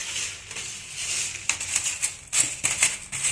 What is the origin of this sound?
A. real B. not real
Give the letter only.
A